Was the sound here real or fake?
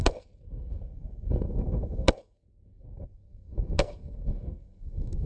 fake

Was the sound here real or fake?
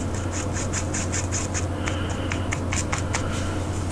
real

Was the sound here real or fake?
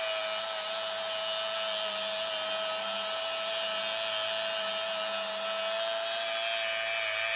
real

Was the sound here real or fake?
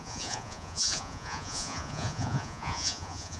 fake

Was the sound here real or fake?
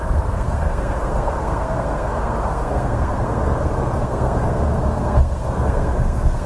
fake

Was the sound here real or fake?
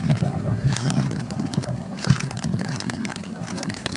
fake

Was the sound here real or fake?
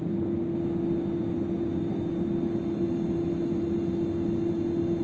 real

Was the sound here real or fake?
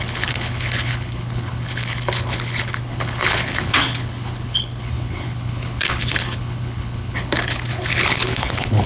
fake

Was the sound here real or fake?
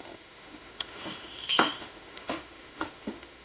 fake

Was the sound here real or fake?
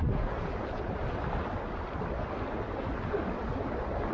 real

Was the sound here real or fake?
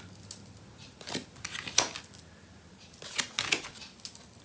real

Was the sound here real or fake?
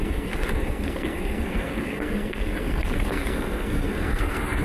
fake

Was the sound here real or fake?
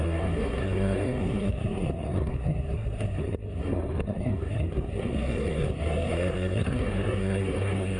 fake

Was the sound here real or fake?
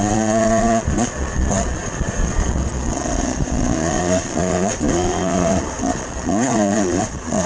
fake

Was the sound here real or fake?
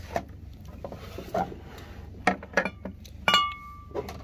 real